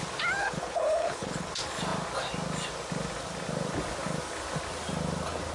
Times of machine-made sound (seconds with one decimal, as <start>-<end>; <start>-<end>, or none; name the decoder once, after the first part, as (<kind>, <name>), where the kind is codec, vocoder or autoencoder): 0.4-1.5 (codec, HILCodec)